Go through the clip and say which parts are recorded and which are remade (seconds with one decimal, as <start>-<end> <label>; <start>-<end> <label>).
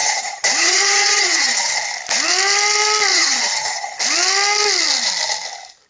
0.0-1.8 remade; 1.8-3.1 recorded; 3.1-4.0 remade; 4.0-5.9 recorded